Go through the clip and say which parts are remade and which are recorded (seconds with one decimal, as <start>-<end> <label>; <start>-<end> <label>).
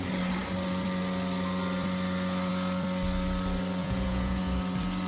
0.0-3.8 recorded; 3.8-4.4 remade; 4.4-5.1 recorded